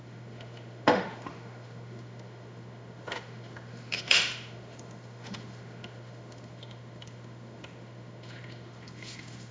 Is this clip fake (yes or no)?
yes